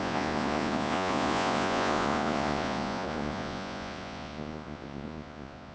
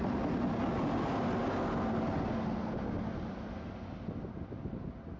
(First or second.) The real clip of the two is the second